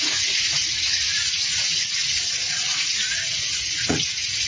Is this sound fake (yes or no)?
yes